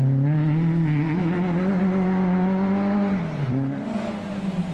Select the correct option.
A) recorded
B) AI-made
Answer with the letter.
A